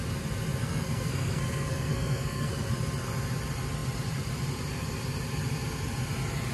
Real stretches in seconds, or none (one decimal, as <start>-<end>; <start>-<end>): 0.0-0.6; 2.7-6.5